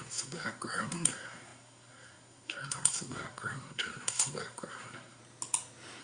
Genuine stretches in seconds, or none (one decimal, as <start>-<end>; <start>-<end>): 5.2-6.0